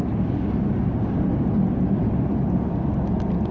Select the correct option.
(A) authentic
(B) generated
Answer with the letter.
B